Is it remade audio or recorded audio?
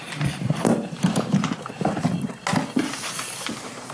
recorded